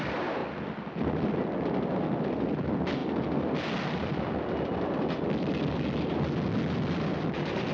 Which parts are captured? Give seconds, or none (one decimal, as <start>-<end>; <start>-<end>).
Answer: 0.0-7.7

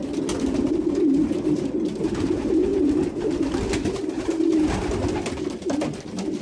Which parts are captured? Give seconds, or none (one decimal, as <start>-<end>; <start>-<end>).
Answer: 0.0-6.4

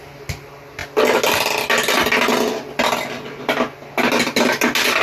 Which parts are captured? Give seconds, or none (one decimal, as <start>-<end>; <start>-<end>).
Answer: 0.0-5.0